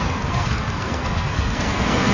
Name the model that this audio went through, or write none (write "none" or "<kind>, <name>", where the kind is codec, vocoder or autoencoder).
codec, SNAC